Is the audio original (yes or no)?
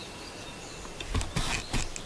yes